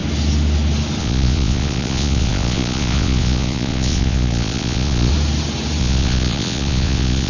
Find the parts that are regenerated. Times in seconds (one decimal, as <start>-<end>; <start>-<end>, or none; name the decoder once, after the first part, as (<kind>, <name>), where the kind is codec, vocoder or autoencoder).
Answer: 1.0-5.1 (vocoder, Vocos); 5.8-7.3